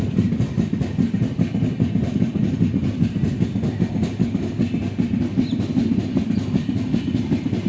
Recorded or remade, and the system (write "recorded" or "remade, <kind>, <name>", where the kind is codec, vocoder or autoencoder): recorded